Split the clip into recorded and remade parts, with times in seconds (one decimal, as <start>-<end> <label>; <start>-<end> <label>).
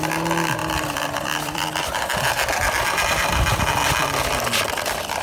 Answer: 0.0-0.6 recorded; 0.6-3.7 remade; 3.7-5.2 recorded